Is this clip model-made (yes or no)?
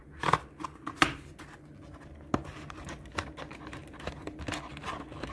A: no